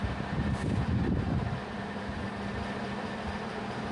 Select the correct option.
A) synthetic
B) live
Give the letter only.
B